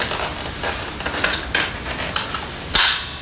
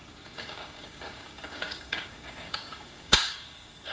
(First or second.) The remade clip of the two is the second